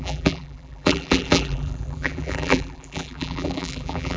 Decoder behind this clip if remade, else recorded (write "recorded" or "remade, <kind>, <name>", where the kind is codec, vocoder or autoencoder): remade, vocoder, BigVGAN v2